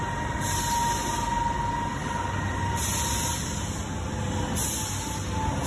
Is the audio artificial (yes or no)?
no